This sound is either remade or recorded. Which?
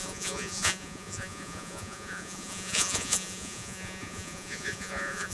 remade